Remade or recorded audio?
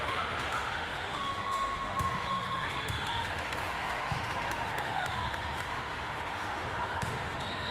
remade